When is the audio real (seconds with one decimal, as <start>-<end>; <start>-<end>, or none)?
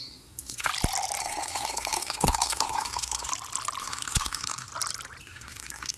0.7-1.2; 3.3-3.8; 4.7-5.2